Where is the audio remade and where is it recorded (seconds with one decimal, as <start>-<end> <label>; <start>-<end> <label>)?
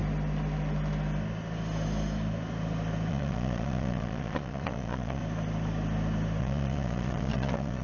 0.0-3.1 recorded; 3.1-5.2 remade; 5.2-6.4 recorded; 6.4-7.8 remade